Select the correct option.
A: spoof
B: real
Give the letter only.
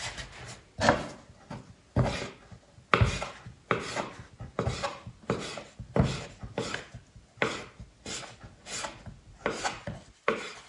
B